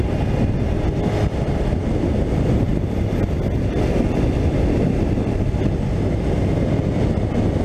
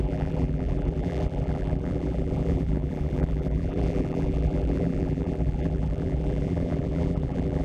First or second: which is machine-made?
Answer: second